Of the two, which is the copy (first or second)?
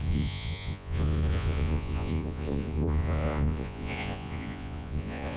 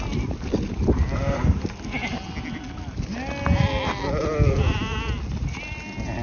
first